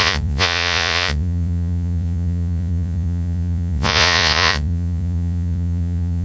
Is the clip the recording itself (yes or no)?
no